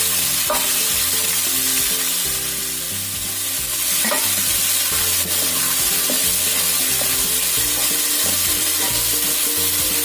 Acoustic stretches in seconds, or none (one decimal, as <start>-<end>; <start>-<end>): 0.0-10.0